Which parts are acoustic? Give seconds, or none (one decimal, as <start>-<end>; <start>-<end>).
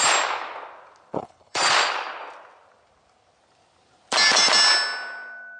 0.0-1.1; 1.6-5.6